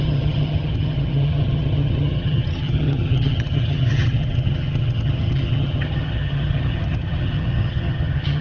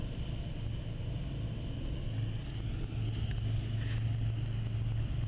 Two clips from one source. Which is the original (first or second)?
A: second